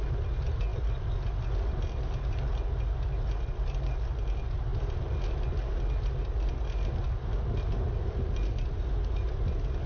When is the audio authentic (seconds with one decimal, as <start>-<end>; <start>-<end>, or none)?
0.0-9.9